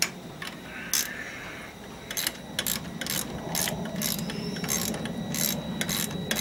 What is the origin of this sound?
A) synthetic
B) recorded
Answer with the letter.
B